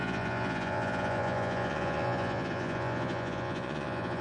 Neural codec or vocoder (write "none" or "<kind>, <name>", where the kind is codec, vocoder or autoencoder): vocoder, Vocos